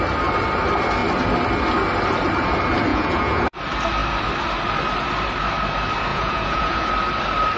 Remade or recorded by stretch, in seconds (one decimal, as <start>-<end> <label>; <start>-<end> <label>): 0.0-2.9 recorded; 2.9-3.6 remade; 3.6-6.1 recorded; 6.1-6.9 remade; 6.9-7.6 recorded